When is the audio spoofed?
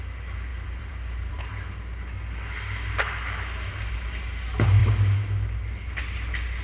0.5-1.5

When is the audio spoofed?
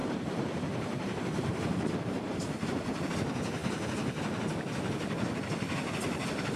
0.0-3.1